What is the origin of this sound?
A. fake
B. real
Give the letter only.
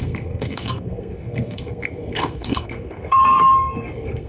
A